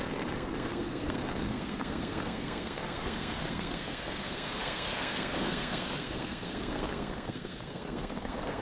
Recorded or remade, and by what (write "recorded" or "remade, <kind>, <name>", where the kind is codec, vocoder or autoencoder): remade, codec, SNAC